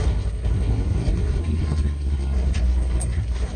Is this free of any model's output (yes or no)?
no